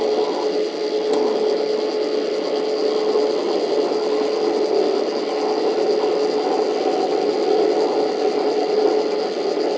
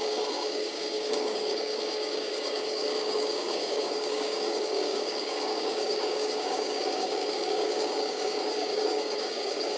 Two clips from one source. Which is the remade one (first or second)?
second